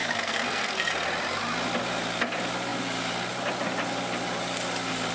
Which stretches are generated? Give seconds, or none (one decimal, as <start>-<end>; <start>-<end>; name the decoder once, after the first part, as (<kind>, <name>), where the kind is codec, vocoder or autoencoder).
0.0-0.9 (codec, SNAC)